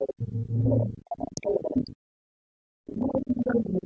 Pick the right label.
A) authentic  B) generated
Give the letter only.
A